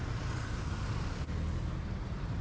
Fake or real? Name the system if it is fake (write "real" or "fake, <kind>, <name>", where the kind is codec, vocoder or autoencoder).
real